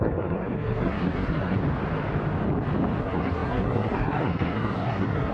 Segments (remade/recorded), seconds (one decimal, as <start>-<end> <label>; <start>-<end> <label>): 0.0-1.6 remade; 1.6-3.0 recorded; 3.0-5.3 remade